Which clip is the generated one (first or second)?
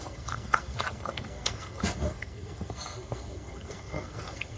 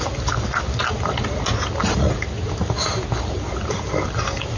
first